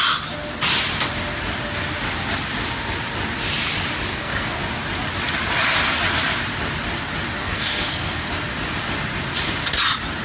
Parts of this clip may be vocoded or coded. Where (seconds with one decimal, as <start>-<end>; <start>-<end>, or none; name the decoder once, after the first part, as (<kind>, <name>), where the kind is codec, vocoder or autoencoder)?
4.1-4.6 (codec, SNAC); 7.4-8.3